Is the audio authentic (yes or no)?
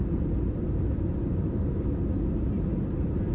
yes